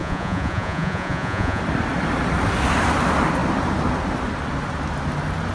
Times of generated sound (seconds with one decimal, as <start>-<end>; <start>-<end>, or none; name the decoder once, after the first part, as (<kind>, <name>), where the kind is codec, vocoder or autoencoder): 0.0-1.6 (vocoder, Vocos)